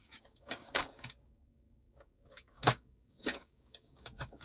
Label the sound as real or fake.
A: fake